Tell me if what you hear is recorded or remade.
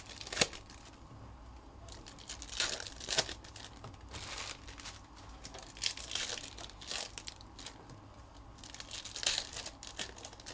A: recorded